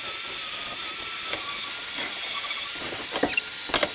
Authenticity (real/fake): real